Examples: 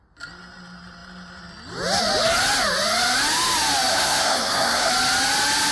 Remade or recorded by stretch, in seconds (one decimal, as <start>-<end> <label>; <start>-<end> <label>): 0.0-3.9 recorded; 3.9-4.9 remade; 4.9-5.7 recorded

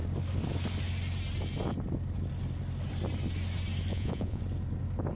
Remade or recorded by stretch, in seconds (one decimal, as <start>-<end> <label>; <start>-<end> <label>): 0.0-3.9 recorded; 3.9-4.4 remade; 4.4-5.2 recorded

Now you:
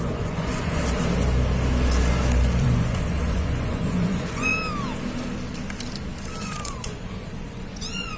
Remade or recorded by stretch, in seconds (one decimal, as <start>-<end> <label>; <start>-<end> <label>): 0.0-0.8 remade; 0.8-2.6 recorded; 2.6-4.5 remade; 4.5-6.4 recorded; 6.4-8.2 remade

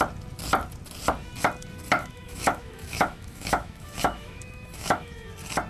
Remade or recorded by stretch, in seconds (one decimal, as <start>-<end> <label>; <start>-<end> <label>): 0.0-2.0 recorded; 2.0-5.3 remade; 5.3-5.7 recorded